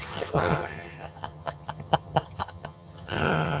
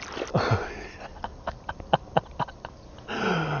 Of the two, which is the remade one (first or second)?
first